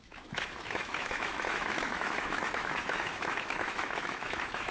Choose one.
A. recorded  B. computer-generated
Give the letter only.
B